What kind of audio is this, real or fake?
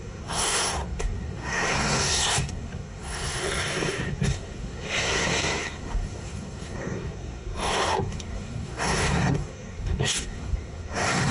fake